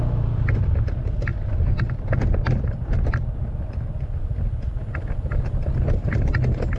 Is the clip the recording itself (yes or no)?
yes